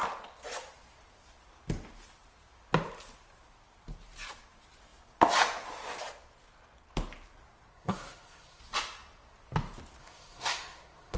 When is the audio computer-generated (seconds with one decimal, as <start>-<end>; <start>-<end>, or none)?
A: 7.7-8.6; 10.0-11.2